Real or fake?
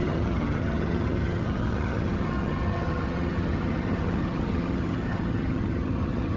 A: fake